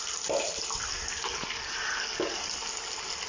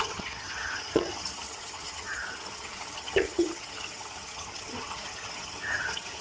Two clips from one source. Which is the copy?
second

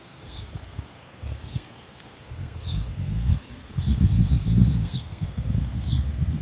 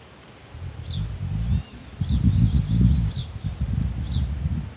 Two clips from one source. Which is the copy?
first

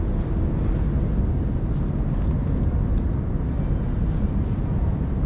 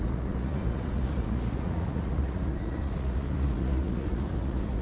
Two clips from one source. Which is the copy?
second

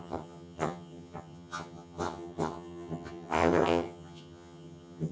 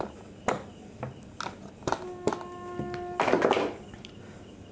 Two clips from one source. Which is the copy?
first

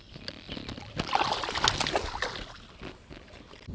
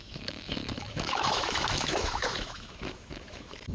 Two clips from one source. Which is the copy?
second